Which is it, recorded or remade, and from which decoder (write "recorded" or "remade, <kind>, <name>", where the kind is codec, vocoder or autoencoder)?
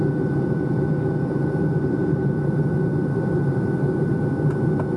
recorded